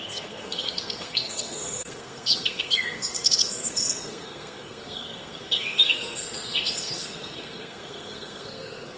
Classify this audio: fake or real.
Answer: fake